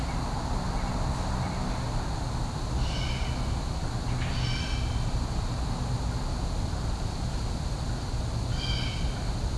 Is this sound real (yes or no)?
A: yes